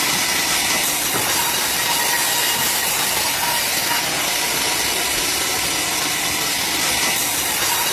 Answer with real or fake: real